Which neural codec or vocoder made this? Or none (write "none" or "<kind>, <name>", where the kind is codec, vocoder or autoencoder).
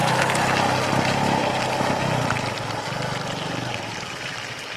none